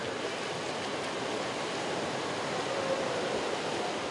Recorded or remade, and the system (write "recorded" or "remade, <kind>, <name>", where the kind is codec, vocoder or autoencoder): recorded